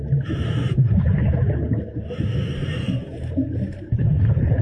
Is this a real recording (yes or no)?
yes